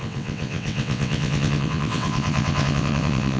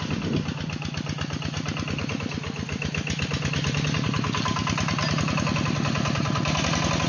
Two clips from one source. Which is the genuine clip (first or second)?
second